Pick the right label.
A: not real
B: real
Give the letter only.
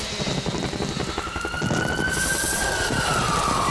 B